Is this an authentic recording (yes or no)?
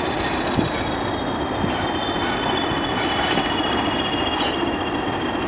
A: yes